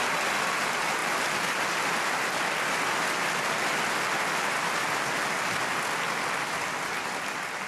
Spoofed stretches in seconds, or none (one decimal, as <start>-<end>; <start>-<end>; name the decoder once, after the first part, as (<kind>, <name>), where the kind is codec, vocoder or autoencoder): none